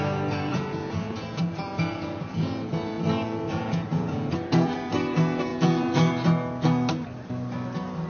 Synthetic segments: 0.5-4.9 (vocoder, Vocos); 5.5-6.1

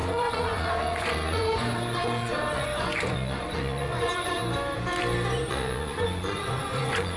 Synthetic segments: 0.0-4.4 (vocoder, Vocos); 5.5-7.2